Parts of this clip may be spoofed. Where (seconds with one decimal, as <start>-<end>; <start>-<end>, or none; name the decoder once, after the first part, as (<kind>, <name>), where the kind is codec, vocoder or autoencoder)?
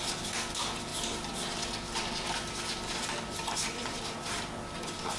none